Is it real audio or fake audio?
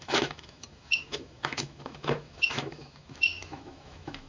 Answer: fake